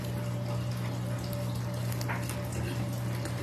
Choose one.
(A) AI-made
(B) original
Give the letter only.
B